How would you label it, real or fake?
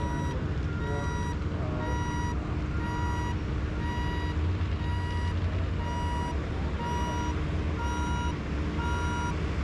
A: real